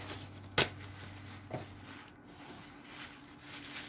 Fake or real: real